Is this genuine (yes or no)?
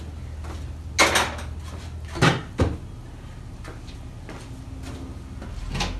yes